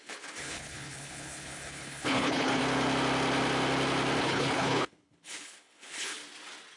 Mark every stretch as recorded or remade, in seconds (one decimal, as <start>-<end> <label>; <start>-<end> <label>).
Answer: 0.0-2.6 remade; 2.6-4.2 recorded; 4.2-6.2 remade; 6.2-6.8 recorded